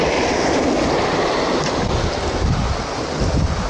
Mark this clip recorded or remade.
recorded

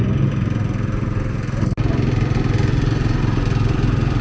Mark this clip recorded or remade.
recorded